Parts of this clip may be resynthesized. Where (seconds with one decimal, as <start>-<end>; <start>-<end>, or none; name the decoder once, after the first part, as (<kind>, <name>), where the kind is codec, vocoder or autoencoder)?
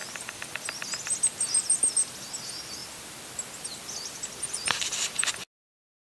0.0-0.9 (vocoder, BigVGAN v2); 2.8-5.3